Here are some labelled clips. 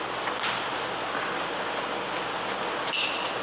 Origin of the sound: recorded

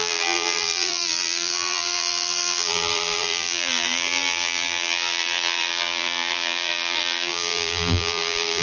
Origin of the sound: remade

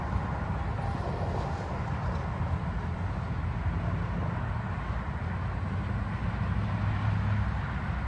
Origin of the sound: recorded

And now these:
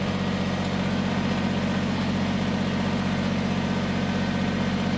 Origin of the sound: recorded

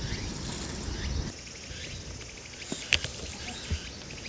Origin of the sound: recorded